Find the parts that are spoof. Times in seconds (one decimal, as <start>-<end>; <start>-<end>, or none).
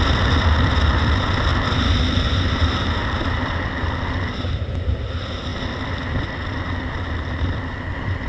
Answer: none